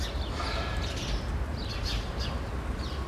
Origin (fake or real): real